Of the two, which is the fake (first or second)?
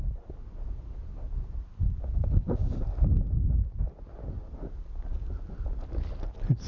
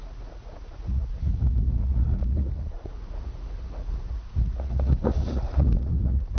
second